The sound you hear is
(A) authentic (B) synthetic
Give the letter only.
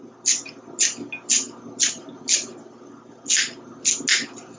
A